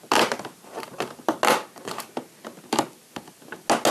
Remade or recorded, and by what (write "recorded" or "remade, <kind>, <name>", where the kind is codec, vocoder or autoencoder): recorded